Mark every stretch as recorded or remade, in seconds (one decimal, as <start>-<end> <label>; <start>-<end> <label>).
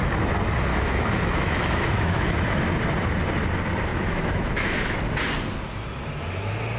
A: 0.0-0.7 recorded; 0.7-2.6 remade; 2.6-3.9 recorded; 3.9-5.0 remade; 5.0-6.8 recorded